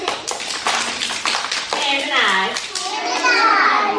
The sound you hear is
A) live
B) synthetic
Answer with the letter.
A